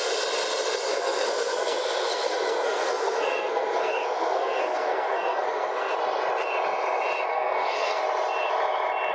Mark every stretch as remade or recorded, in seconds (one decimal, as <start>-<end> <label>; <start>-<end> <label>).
0.0-0.9 recorded; 0.9-5.9 remade; 5.9-7.3 recorded; 7.3-8.0 remade; 8.0-9.1 recorded